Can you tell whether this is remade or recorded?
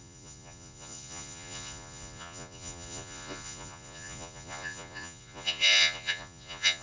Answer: remade